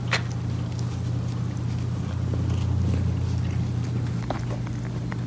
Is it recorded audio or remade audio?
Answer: recorded